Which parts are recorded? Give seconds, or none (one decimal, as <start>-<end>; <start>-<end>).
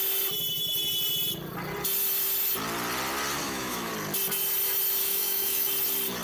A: 0.0-3.4; 3.9-5.0; 5.7-6.2